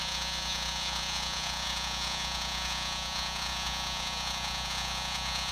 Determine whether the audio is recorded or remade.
remade